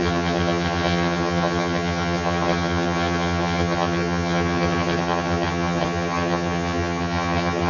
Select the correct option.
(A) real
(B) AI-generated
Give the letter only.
B